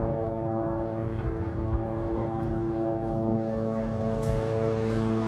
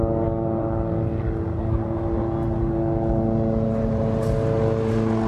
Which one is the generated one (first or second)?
first